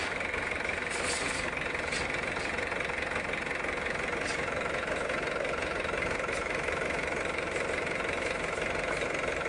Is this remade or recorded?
recorded